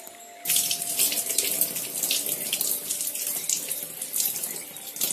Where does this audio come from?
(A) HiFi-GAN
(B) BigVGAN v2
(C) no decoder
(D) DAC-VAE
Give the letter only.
C